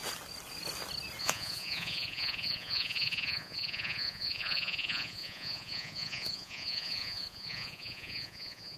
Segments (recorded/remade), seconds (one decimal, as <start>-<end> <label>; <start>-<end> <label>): 0.0-1.2 recorded; 1.2-8.8 remade